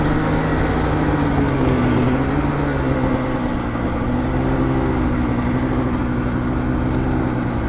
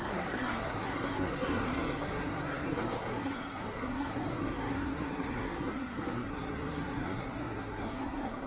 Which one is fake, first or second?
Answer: second